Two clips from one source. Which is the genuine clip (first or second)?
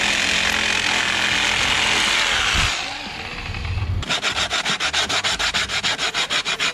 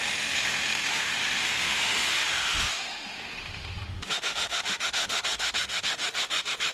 first